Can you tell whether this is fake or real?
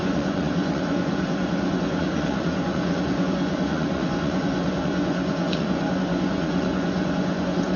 fake